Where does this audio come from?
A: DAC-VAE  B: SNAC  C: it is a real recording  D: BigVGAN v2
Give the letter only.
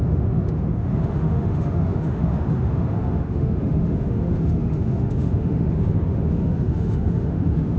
A